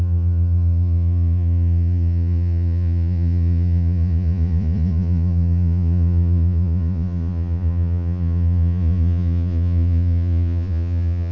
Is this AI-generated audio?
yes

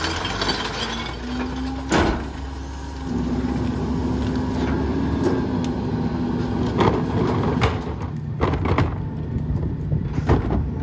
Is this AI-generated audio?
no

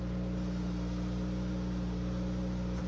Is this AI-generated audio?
no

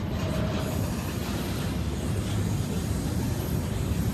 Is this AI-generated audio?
no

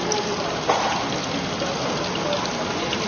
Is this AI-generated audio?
no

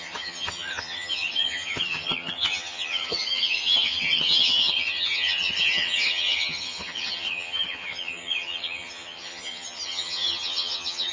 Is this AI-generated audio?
yes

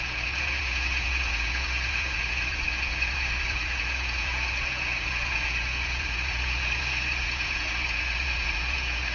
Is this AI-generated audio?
yes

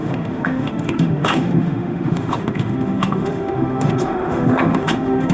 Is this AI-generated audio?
yes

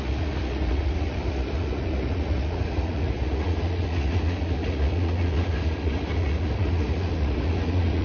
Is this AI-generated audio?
yes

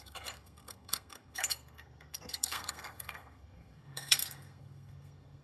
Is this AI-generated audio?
yes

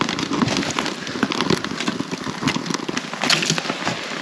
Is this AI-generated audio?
no